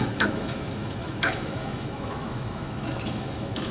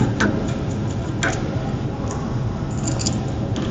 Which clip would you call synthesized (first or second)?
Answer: first